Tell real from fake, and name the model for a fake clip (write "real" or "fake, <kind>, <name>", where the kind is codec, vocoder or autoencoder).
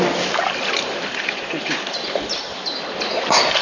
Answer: fake, vocoder, BigVGAN v2